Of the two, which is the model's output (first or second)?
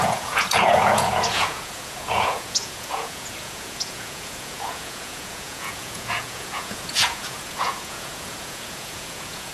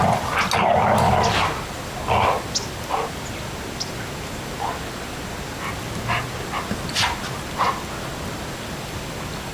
first